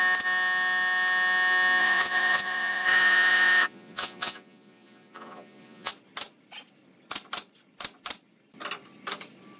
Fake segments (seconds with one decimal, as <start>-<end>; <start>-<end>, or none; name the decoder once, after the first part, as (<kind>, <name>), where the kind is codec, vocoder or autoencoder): 1.8-5.9 (vocoder, Vocos)